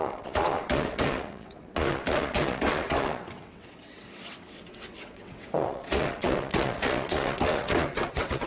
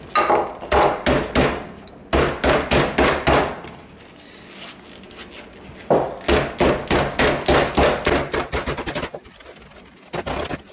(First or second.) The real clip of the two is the second